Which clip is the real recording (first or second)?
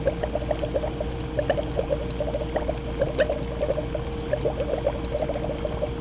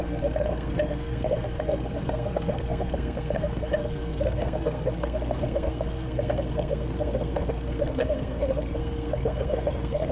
first